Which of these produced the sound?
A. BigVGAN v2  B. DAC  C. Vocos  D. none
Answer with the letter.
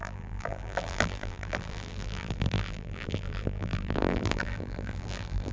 A